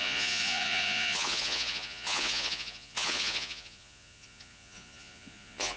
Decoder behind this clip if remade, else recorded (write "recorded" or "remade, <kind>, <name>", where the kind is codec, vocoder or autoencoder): remade, vocoder, Vocos